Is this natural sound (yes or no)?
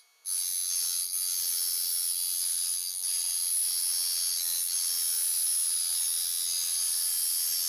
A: yes